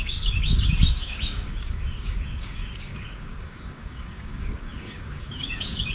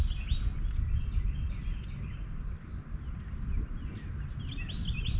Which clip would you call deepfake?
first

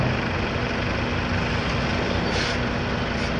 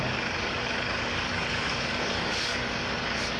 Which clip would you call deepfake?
second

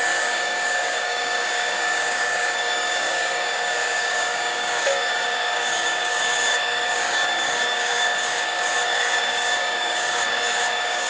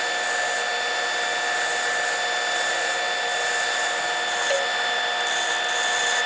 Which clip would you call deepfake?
first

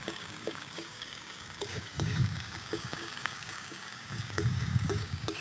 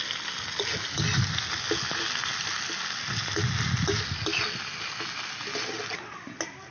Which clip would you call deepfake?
first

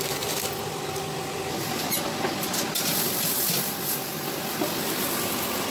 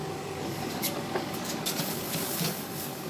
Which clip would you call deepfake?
second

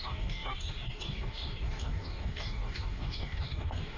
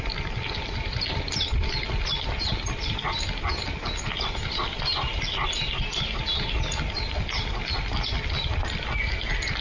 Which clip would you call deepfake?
first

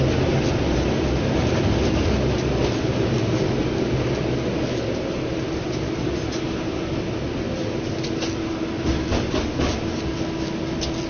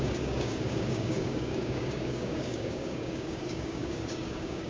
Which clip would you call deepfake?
second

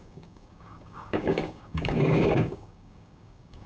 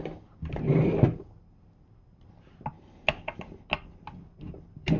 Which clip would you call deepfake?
first